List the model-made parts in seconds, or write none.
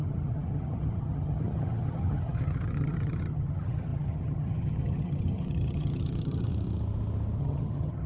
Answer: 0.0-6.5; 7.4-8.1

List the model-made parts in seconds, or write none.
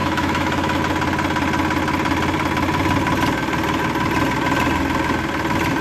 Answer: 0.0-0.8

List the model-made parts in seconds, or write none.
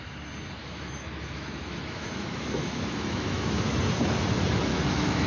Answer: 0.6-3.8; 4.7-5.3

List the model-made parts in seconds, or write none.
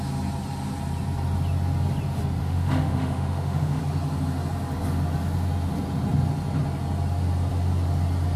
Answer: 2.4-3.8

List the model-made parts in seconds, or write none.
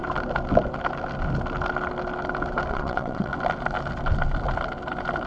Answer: 2.7-3.3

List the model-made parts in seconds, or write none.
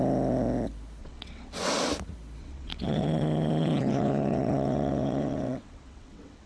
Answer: 1.0-1.7; 2.4-6.5